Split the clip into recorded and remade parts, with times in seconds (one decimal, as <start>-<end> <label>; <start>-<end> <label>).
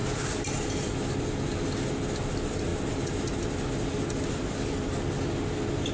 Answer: 0.0-5.9 recorded